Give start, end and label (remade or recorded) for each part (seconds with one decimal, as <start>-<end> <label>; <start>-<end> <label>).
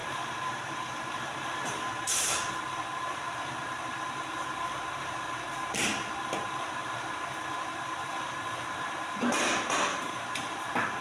0.0-2.3 remade; 2.3-9.9 recorded; 9.9-10.5 remade; 10.5-11.0 recorded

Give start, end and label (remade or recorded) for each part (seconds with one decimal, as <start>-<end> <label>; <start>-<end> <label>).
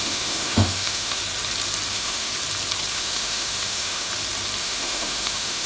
0.0-1.2 remade; 1.2-1.9 recorded; 1.9-2.3 remade; 2.3-2.9 recorded; 2.9-4.1 remade; 4.1-4.6 recorded; 4.6-5.7 remade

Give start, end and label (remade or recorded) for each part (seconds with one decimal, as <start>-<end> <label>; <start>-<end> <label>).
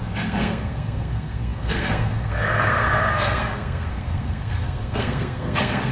0.0-5.9 remade